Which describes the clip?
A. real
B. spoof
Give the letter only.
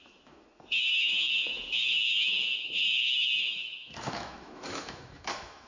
B